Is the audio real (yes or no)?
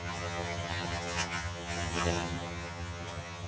no